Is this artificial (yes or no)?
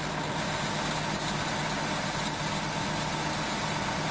no